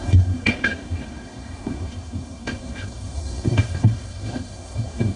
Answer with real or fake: fake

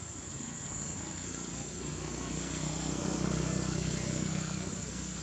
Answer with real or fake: fake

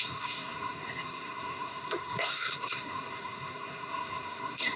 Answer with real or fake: fake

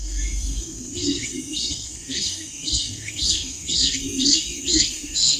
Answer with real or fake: fake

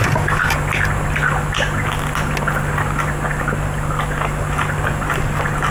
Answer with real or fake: real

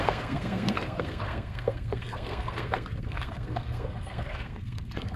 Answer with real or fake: fake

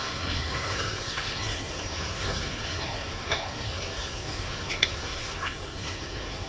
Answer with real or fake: fake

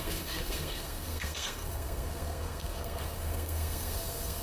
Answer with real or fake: fake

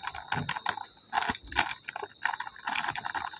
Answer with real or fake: real